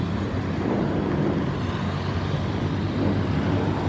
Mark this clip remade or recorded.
recorded